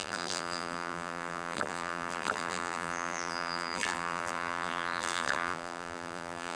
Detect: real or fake fake